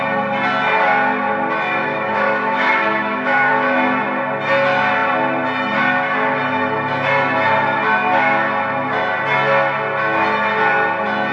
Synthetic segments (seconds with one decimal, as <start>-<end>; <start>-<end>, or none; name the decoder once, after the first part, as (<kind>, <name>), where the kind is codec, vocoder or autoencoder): 1.8-3.5 (autoencoder, DAC-VAE)